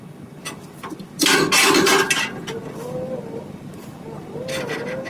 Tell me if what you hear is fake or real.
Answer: real